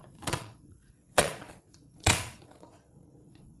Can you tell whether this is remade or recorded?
remade